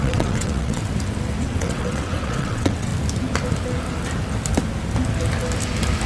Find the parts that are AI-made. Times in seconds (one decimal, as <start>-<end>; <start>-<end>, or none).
0.0-0.8; 1.4-2.9